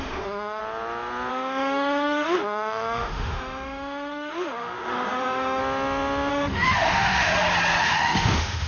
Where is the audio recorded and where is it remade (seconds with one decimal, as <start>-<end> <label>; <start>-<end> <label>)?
0.0-0.6 remade; 0.6-1.3 recorded; 1.3-5.6 remade; 5.6-6.3 recorded; 6.3-7.3 remade; 7.3-7.8 recorded; 7.8-8.7 remade